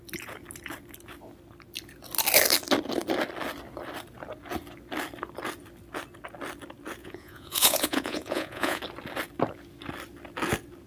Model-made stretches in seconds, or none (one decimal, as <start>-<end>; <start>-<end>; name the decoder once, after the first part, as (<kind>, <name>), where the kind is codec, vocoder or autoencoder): 7.0-8.8 (vocoder, Vocos)